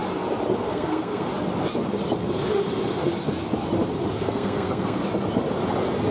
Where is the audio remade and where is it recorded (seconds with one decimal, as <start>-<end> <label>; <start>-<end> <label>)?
0.0-0.7 recorded; 0.7-1.3 remade; 1.3-4.1 recorded; 4.1-5.0 remade; 5.0-6.1 recorded

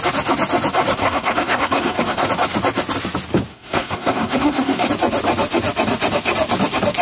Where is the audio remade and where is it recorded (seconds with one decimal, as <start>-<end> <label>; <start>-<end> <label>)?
0.0-1.0 recorded; 1.0-2.3 remade; 2.3-3.5 recorded; 3.5-4.9 remade; 4.9-7.0 recorded

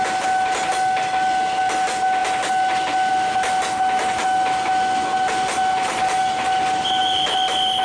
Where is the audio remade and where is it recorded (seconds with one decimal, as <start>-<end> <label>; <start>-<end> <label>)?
0.0-7.8 recorded

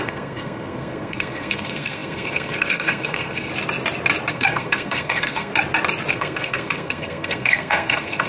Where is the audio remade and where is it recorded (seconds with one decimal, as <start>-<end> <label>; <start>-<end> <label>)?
0.0-3.5 remade; 3.5-4.3 recorded; 4.3-5.5 remade; 5.5-6.1 recorded; 6.1-8.3 remade

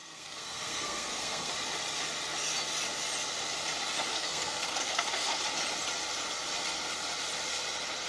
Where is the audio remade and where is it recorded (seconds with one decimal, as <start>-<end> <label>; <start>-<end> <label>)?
0.0-1.5 remade; 1.5-4.1 recorded; 4.1-5.4 remade; 5.4-8.1 recorded